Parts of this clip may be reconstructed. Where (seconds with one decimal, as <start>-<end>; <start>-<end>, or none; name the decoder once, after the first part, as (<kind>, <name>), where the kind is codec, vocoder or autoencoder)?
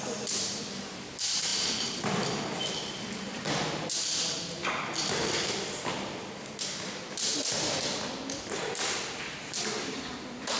none